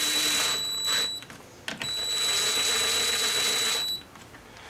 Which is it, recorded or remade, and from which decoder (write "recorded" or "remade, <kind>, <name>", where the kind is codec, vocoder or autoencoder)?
recorded